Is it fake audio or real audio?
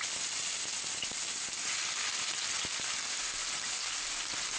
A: real